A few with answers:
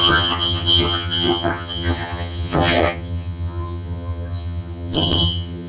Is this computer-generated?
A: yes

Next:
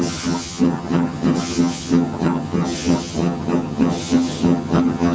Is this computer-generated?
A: yes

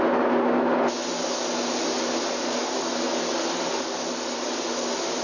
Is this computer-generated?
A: no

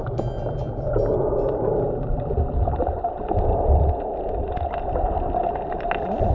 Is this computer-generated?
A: no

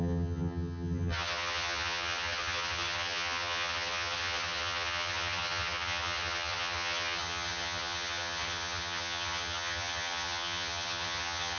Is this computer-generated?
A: yes